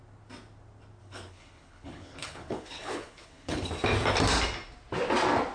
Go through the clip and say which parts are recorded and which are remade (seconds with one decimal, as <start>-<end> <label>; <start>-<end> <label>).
0.0-1.0 recorded; 1.0-3.7 remade; 3.7-5.5 recorded